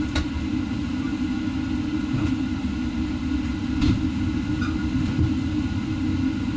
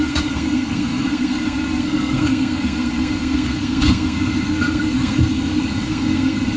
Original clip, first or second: first